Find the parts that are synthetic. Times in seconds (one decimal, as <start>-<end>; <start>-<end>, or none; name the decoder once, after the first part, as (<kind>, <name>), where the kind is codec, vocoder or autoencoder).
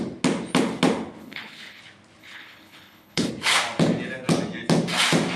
1.2-1.8 (codec, HILCodec); 2.2-3.3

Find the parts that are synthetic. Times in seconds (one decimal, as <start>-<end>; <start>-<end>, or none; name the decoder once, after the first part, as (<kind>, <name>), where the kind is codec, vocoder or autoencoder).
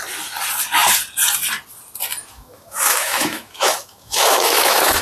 2.2-5.0 (autoencoder, DAC-VAE)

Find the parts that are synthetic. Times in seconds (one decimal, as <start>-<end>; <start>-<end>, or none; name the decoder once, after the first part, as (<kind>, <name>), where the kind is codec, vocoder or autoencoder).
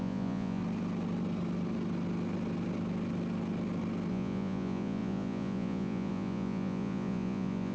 0.0-0.6 (vocoder, Vocos); 4.1-7.7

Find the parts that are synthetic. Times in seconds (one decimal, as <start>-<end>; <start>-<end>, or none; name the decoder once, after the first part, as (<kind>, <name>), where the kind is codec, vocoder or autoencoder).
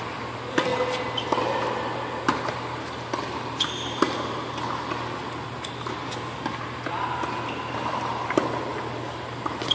none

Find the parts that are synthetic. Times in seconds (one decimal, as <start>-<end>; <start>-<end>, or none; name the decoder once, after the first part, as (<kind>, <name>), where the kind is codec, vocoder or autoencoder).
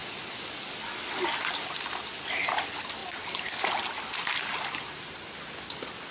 none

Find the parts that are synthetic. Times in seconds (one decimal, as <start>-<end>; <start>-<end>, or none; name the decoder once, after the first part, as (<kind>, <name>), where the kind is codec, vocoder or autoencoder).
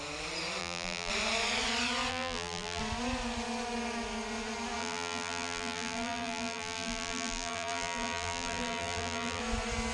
0.6-1.1 (vocoder, BigVGAN v2); 2.1-2.8; 4.8-9.4